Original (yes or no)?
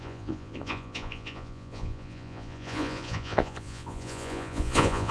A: no